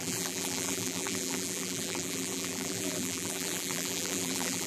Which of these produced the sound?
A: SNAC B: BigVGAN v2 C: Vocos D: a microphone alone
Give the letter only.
B